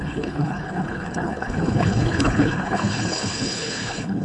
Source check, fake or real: fake